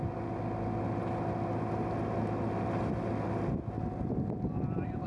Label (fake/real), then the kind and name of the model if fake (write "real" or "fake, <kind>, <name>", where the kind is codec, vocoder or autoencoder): real